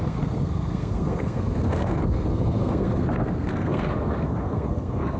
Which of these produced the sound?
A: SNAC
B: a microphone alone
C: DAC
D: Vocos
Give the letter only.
A